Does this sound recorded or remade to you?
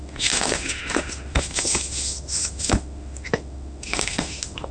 remade